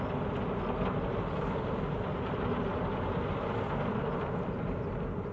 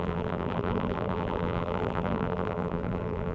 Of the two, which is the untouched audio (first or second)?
first